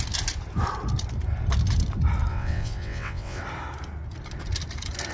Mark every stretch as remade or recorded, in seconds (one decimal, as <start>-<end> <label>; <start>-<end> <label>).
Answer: 0.0-2.3 recorded; 2.3-3.4 remade; 3.4-5.1 recorded